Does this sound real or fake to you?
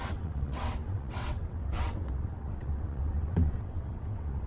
fake